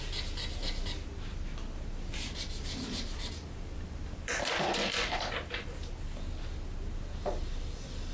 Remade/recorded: recorded